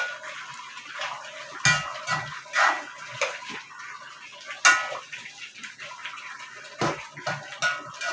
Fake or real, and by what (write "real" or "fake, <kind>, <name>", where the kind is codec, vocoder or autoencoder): real